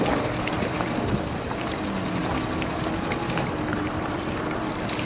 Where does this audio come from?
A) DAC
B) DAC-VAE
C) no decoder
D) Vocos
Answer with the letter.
C